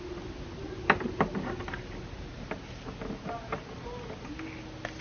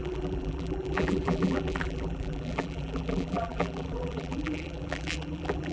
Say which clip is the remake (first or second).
second